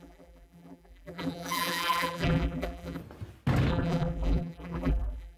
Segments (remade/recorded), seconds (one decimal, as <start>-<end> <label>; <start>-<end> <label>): 0.0-3.0 remade; 3.0-3.7 recorded; 3.7-5.4 remade